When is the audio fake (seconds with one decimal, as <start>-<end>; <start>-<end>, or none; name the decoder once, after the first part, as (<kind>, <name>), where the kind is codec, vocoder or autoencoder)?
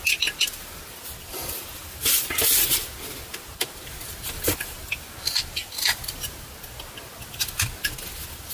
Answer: none